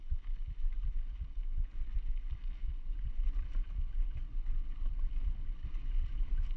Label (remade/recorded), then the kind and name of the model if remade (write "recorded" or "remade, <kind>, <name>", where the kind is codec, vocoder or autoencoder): recorded